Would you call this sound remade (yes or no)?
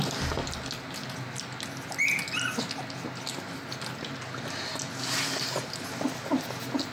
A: no